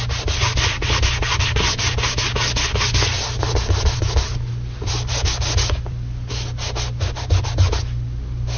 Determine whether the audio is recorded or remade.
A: recorded